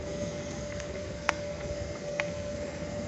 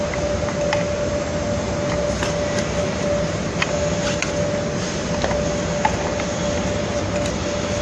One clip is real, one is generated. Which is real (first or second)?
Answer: second